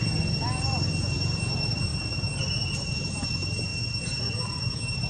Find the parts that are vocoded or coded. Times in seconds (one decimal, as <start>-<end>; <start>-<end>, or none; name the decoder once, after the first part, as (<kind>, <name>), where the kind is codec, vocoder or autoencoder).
none